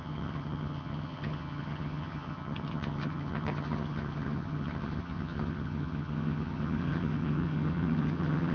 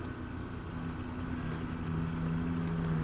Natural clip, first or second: second